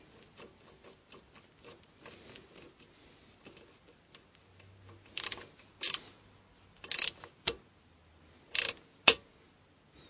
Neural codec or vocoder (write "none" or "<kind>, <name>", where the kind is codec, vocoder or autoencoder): none